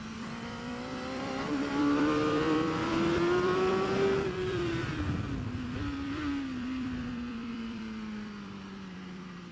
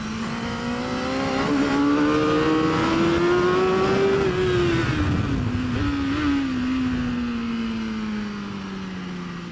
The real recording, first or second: second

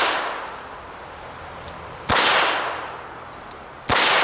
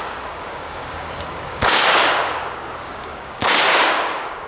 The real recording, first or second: first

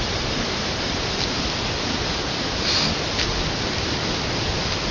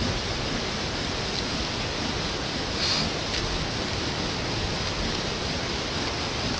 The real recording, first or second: second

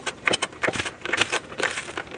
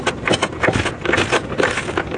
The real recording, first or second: second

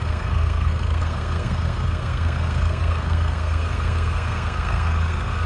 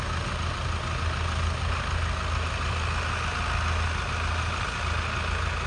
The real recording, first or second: second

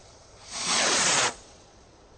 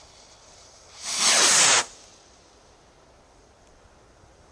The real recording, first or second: second